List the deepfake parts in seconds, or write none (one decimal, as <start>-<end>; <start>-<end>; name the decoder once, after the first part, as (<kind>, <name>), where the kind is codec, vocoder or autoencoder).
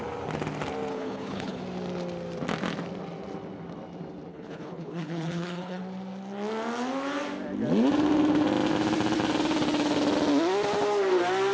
0.9-1.6 (codec, HILCodec); 4.3-5.8